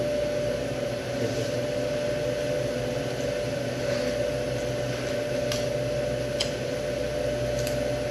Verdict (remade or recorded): recorded